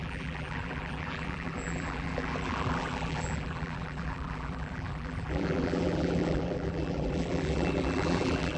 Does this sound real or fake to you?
fake